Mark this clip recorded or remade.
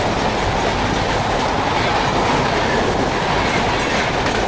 recorded